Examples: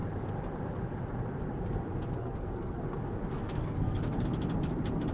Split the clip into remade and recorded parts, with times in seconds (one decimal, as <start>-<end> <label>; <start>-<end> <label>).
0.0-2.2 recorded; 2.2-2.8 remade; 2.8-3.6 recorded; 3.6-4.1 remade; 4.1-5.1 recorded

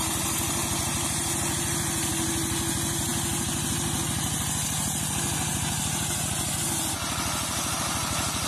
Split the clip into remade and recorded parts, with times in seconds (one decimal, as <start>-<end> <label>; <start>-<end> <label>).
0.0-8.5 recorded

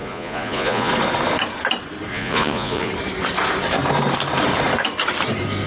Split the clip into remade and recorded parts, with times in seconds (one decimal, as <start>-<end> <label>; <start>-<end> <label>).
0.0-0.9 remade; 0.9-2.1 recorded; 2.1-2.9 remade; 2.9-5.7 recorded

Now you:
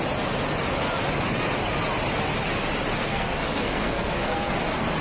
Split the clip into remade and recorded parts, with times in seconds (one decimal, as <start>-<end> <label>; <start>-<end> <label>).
0.0-3.0 recorded; 3.0-4.5 remade; 4.5-5.0 recorded

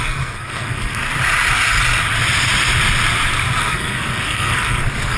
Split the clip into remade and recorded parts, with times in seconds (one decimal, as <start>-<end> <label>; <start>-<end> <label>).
0.0-1.1 remade; 1.1-3.6 recorded; 3.6-5.2 remade

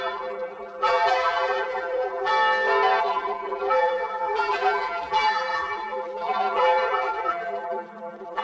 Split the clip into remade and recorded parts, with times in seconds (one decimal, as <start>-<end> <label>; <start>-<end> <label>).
0.0-2.3 remade; 2.3-3.0 recorded; 3.0-8.4 remade

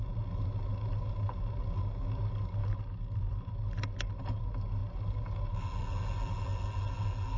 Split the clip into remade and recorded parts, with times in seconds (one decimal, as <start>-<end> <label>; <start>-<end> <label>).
0.0-7.4 recorded